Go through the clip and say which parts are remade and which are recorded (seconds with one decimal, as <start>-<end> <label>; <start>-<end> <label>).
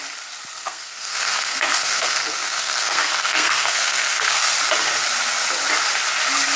0.0-0.5 recorded; 0.5-4.4 remade; 4.4-6.6 recorded